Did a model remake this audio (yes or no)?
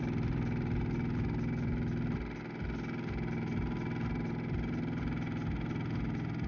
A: no